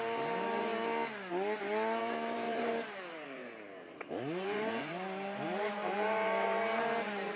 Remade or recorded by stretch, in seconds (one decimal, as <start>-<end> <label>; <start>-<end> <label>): 0.0-0.7 remade; 0.7-2.0 recorded; 2.0-7.4 remade